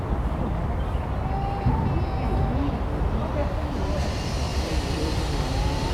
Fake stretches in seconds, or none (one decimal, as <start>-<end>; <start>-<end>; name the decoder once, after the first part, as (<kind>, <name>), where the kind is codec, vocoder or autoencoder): 3.4-4.0 (vocoder, BigVGAN v2); 4.5-5.9